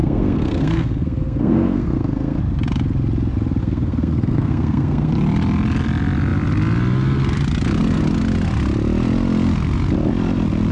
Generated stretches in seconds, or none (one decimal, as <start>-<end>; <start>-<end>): 0.0-2.4; 3.6-5.1